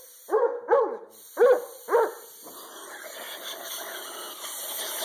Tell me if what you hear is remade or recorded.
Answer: recorded